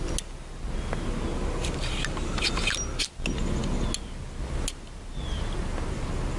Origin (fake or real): real